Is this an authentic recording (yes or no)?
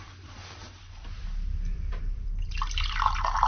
no